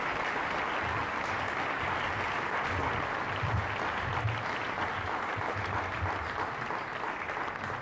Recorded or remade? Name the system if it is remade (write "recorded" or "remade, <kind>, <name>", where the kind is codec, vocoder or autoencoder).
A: recorded